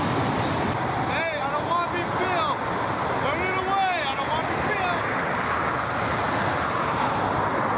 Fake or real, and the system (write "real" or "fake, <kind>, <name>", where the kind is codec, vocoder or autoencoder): real